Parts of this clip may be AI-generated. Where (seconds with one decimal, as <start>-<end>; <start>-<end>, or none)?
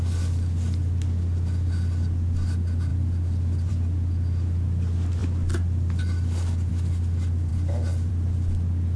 none